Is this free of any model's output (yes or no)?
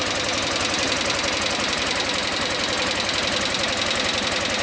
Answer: yes